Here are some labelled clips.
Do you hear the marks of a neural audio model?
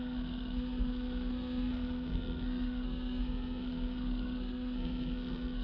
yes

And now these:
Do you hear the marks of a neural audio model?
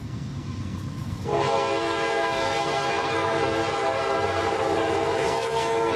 yes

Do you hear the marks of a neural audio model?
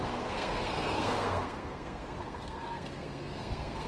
yes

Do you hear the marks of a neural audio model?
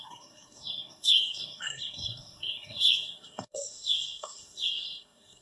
yes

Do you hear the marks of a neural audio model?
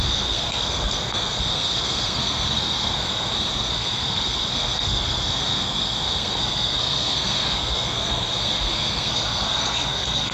yes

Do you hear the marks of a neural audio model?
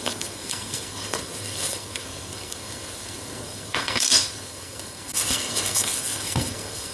yes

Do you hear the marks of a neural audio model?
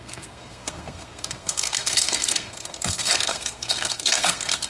yes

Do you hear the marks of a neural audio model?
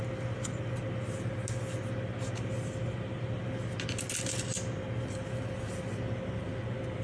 no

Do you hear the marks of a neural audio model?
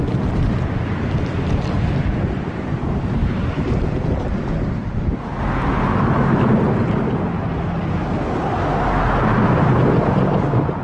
no